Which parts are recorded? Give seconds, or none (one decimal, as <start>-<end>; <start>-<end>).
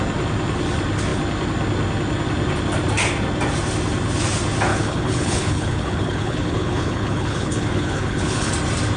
0.0-4.7; 8.5-9.0